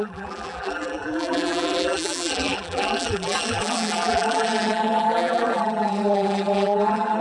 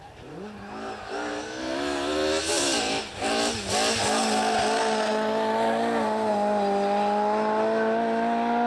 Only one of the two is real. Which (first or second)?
second